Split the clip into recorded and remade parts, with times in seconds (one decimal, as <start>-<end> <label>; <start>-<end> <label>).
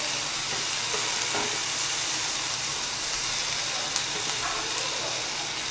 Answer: 0.0-1.6 recorded; 1.6-5.0 remade; 5.0-5.7 recorded